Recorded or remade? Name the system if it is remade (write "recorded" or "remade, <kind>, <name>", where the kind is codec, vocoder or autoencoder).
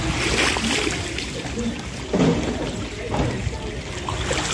recorded